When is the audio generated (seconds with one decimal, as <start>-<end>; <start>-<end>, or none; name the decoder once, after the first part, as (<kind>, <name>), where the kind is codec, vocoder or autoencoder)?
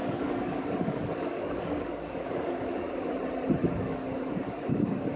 0.0-3.1 (codec, DAC); 3.6-5.2